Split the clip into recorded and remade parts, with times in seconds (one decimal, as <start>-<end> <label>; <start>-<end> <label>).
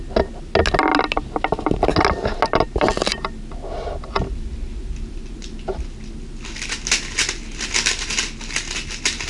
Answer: 0.0-9.3 recorded